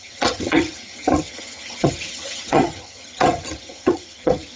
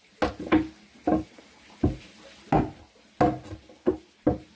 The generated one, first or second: first